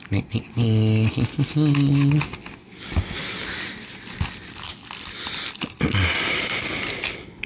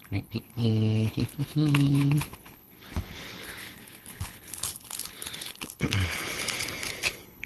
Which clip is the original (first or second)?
first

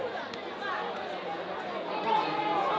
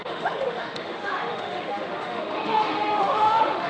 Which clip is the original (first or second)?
first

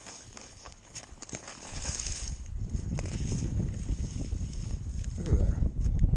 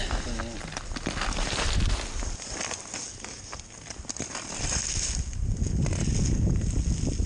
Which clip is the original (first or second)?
second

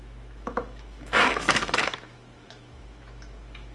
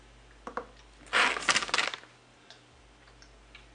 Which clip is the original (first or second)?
second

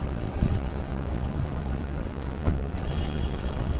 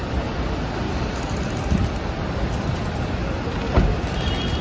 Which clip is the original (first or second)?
second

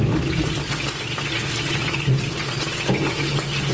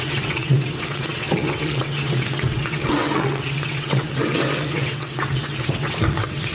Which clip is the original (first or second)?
first